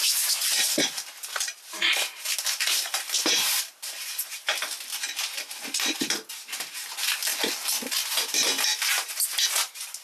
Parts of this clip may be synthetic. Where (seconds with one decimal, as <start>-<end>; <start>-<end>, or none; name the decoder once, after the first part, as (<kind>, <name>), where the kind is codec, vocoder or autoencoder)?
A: none